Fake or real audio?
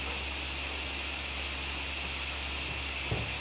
real